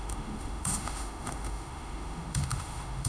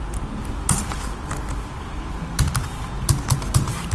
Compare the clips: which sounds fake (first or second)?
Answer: first